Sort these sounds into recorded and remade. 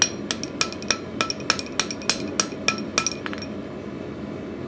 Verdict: recorded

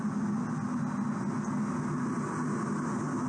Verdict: recorded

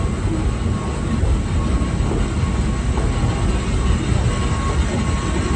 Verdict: recorded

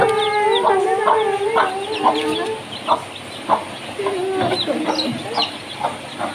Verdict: recorded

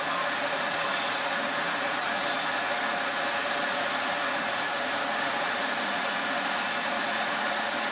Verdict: remade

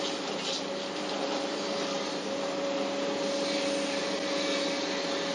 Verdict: recorded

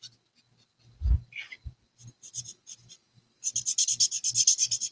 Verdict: recorded